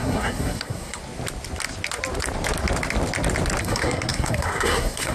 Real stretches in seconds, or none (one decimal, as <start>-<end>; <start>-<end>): 1.0-3.6